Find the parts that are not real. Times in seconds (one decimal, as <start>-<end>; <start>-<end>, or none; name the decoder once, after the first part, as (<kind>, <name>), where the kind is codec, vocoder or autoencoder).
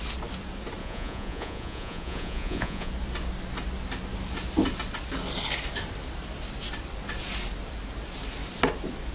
0.8-2.9 (vocoder, Vocos)